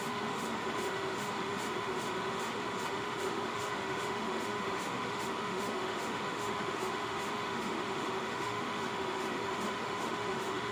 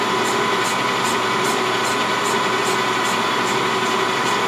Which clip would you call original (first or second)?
second